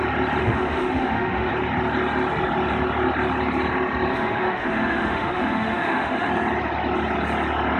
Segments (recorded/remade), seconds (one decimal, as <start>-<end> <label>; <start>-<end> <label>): 0.0-0.4 recorded; 0.4-1.5 remade; 1.5-4.1 recorded; 4.1-6.3 remade; 6.3-7.8 recorded